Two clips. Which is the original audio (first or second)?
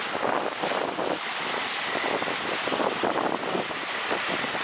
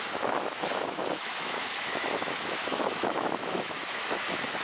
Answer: first